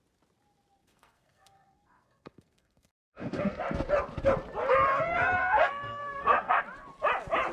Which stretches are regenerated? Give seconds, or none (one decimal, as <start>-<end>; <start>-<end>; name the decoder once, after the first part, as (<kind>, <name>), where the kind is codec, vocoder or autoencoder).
0.8-3.6 (codec, SNAC); 4.9-6.6